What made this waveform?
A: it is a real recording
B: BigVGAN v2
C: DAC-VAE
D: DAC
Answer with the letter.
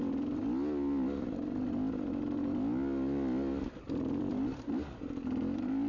A